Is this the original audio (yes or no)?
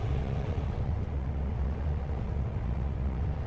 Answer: no